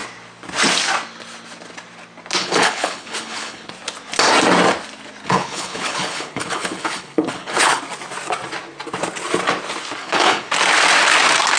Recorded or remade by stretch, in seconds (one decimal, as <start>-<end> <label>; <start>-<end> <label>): 0.0-2.4 recorded; 2.4-3.7 remade; 3.7-5.2 recorded; 5.2-7.8 remade; 7.8-10.0 recorded; 10.0-10.5 remade; 10.5-11.6 recorded